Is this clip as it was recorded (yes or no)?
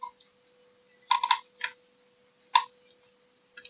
yes